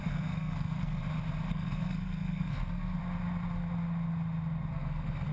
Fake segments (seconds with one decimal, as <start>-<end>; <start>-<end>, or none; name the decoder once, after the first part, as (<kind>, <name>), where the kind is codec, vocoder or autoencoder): 0.0-1.0 (codec, SNAC); 1.5-3.0; 4.7-5.3